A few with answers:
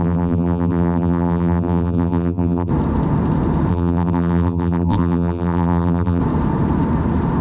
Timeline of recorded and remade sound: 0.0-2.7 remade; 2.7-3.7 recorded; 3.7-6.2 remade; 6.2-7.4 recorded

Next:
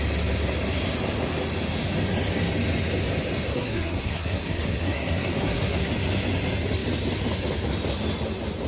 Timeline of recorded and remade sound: 0.0-3.5 recorded; 3.5-5.9 remade; 5.9-8.7 recorded

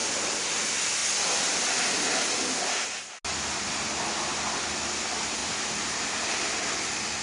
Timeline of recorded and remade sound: 0.0-5.4 recorded; 5.4-6.1 remade; 6.1-7.2 recorded

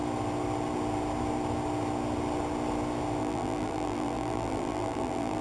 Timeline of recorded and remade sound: 0.0-3.2 recorded; 3.2-5.4 remade

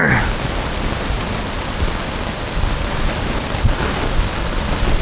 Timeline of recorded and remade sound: 0.0-5.0 recorded